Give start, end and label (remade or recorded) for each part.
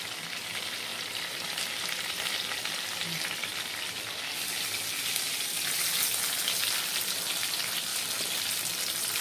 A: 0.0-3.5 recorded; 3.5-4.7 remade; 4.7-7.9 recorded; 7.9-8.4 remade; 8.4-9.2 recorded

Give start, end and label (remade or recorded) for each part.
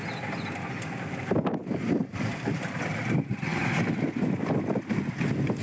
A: 0.0-1.6 recorded; 1.6-2.9 remade; 2.9-5.6 recorded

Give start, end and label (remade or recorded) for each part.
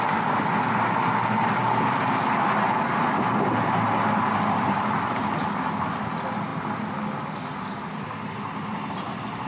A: 0.0-9.5 recorded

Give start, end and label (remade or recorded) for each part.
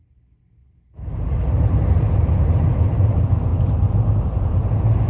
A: 0.0-0.6 remade; 0.6-2.2 recorded; 2.2-5.1 remade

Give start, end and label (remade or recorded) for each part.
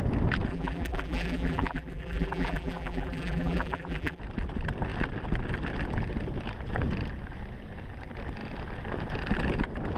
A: 0.0-0.5 recorded; 0.5-4.2 remade; 4.2-10.0 recorded